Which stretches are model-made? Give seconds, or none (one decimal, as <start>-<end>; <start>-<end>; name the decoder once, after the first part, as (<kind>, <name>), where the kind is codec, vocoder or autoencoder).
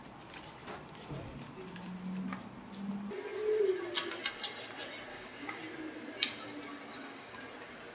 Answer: 5.1-5.6 (codec, DAC); 6.9-7.4